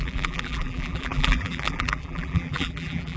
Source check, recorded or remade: remade